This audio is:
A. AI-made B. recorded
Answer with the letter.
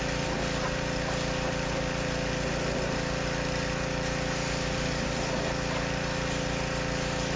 B